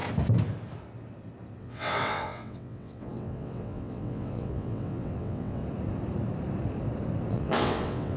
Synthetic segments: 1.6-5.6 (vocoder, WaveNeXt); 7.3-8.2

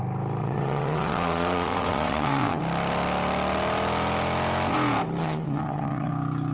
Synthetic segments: 0.4-2.6 (vocoder, WaveNeXt); 5.2-6.1

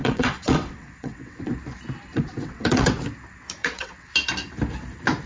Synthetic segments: 0.0-1.5 (vocoder, WaveNeXt); 2.1-2.9; 3.6-4.1

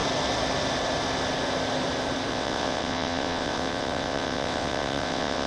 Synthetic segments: 2.3-5.5 (vocoder, WaveNeXt)

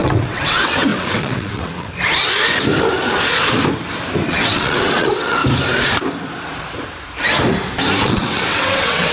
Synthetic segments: 0.0-1.9 (vocoder, WaveNeXt); 4.3-5.4; 8.0-9.1